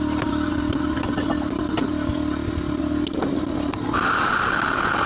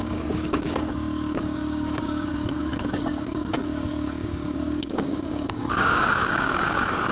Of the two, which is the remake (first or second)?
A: second